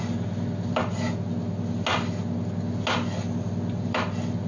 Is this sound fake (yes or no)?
no